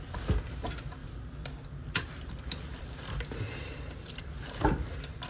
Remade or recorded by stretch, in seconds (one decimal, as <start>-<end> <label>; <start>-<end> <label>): 0.0-1.0 recorded; 1.0-4.2 remade; 4.2-5.3 recorded